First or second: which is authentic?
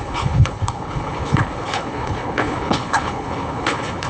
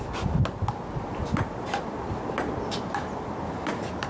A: second